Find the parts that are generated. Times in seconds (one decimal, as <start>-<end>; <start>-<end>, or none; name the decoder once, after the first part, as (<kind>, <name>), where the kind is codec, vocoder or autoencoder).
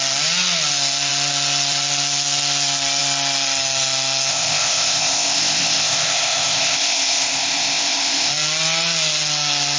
4.3-8.3 (codec, ZipCodec)